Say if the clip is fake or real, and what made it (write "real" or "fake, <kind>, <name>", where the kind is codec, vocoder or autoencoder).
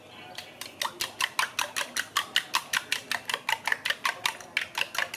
real